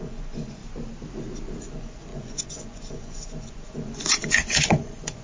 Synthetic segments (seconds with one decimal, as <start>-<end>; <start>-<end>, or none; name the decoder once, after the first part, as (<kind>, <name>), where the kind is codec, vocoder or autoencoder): 0.0-0.6 (vocoder, Vocos); 1.6-5.2